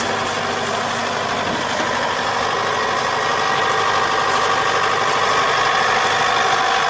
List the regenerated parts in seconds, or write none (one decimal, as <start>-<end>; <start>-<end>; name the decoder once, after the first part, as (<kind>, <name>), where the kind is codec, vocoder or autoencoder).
none